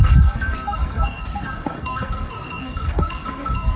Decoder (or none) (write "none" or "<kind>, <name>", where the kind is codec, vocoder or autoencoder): codec, SNAC